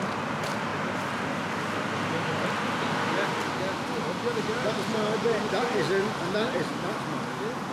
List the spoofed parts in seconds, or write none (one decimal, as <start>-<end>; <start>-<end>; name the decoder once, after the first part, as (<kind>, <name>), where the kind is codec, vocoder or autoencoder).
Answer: none